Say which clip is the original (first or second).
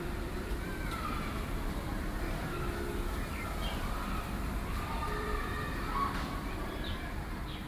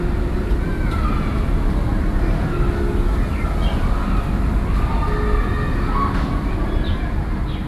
second